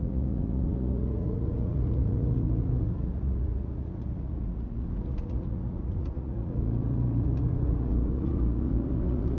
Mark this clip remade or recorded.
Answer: remade